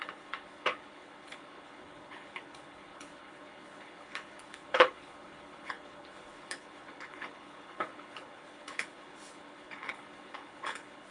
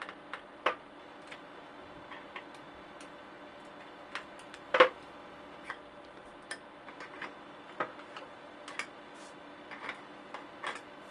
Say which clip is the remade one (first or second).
first